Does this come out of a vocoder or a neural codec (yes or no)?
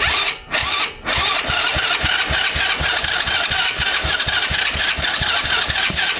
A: no